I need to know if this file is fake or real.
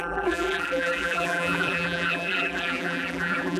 fake